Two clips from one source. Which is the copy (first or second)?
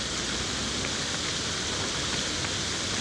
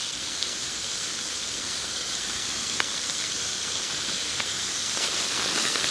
second